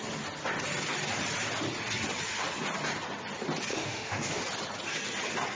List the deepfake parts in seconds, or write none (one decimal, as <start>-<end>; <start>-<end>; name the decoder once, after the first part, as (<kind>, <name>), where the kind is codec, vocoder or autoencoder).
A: 3.7-4.4 (autoencoder, DAC-VAE)